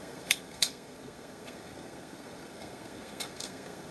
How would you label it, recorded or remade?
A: remade